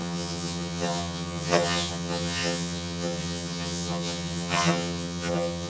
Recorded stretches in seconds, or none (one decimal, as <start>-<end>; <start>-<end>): none